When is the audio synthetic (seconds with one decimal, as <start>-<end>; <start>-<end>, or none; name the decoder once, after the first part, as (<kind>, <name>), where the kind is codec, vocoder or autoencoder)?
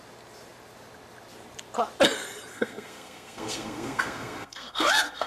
2.5-5.3 (codec, SNAC)